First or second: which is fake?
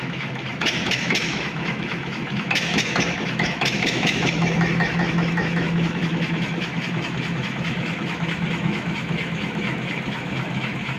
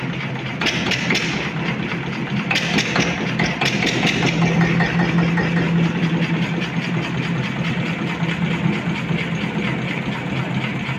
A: first